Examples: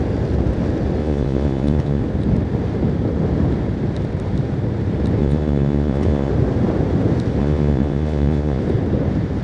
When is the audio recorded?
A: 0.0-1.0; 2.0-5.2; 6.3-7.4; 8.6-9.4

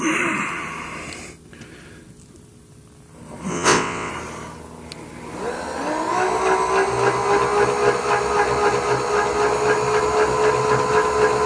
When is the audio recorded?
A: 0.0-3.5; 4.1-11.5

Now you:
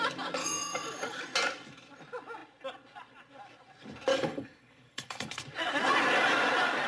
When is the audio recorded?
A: 0.0-0.4; 1.2-4.1; 5.3-6.9